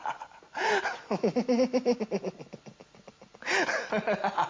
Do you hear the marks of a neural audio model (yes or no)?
no